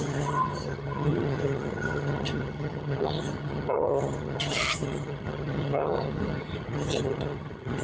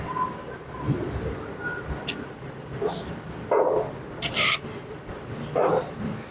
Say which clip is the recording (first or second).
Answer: second